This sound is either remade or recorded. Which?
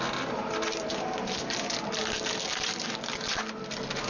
recorded